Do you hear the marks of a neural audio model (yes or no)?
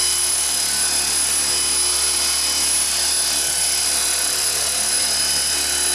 no